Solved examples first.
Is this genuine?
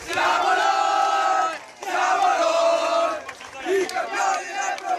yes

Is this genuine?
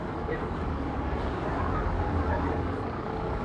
no